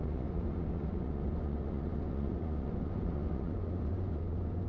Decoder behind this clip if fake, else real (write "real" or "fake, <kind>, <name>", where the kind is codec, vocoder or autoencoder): fake, vocoder, Vocos